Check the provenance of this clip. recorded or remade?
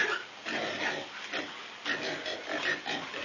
recorded